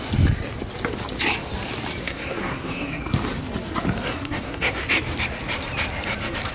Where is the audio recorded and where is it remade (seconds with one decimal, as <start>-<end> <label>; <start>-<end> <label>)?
0.0-2.0 recorded; 2.0-3.0 remade; 3.0-4.1 recorded; 4.1-4.8 remade; 4.8-6.5 recorded